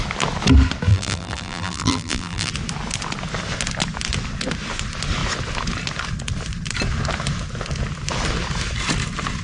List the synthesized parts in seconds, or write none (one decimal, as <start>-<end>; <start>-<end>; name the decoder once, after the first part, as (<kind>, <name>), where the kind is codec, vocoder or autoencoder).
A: 0.9-2.5 (vocoder, BigVGAN v2)